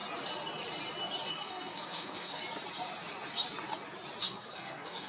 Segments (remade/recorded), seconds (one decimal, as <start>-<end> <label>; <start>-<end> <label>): 0.0-1.3 recorded; 1.3-2.4 remade; 2.4-4.2 recorded; 4.2-5.1 remade

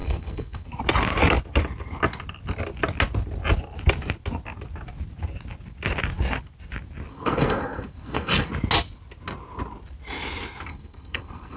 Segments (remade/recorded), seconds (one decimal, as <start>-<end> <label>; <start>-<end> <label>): 0.0-0.8 remade; 0.8-7.1 recorded; 7.1-8.5 remade; 8.5-10.7 recorded; 10.7-11.6 remade

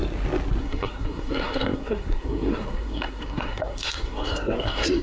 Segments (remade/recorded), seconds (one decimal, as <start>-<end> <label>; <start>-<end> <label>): 0.0-0.6 recorded; 0.6-5.0 remade

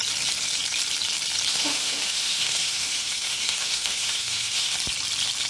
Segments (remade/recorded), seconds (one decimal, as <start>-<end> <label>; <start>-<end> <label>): 0.0-1.5 recorded; 1.5-4.7 remade; 4.7-5.5 recorded

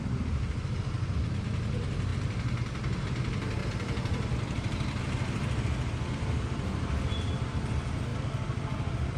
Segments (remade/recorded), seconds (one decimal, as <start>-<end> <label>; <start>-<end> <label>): 0.0-2.1 recorded; 2.1-3.0 remade; 3.0-3.6 recorded; 3.6-5.0 remade; 5.0-9.2 recorded

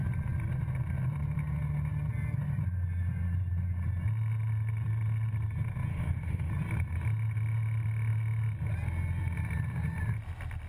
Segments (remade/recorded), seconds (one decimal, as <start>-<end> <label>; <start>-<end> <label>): 0.0-5.9 recorded; 5.9-6.5 remade; 6.5-10.7 recorded

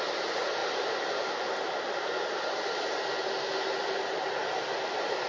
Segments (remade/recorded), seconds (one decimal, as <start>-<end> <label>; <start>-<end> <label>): 0.0-5.3 recorded